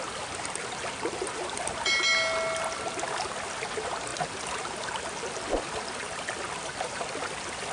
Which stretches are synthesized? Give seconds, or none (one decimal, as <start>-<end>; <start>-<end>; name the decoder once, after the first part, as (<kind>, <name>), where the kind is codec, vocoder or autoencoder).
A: none